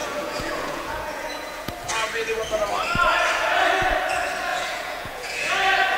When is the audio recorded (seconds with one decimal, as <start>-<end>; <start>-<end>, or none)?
1.7-4.5; 5.5-6.0